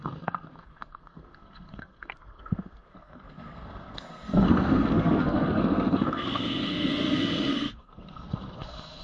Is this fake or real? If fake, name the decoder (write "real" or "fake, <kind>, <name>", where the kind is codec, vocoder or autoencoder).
fake, codec, SNAC